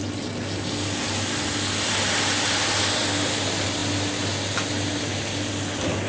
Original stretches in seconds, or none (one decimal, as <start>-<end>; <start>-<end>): 0.0-6.1